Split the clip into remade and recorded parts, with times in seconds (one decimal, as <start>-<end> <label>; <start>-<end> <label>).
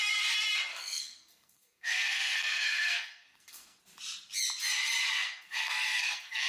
0.0-0.7 recorded; 0.7-3.8 remade; 3.8-5.1 recorded; 5.1-6.5 remade